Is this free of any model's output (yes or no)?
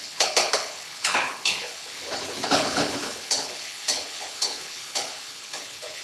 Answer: no